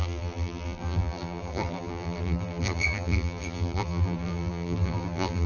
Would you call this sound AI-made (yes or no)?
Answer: yes